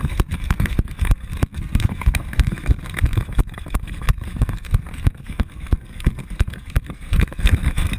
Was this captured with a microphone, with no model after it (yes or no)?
no